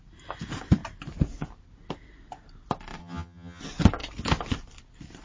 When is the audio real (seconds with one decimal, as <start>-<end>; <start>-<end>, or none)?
0.0-3.0; 3.6-5.2